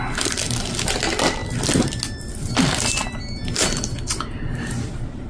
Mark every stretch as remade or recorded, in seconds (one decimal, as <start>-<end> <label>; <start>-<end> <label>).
0.0-3.0 recorded; 3.0-3.8 remade; 3.8-5.3 recorded